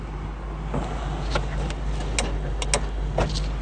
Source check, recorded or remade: recorded